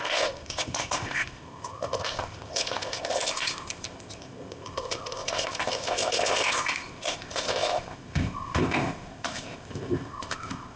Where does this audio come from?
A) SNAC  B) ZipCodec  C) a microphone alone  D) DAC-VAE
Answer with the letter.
B